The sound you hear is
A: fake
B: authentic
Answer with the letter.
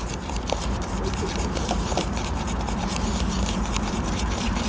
A